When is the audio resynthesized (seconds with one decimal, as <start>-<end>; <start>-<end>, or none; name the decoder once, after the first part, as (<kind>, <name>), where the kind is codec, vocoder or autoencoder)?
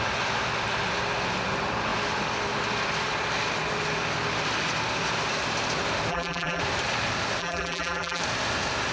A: 6.1-6.6 (vocoder, BigVGAN v2); 7.4-8.2